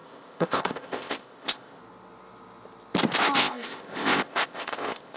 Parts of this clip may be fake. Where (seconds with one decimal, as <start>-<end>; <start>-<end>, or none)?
0.0-1.8; 3.4-5.2